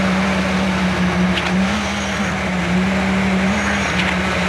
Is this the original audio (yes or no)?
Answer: yes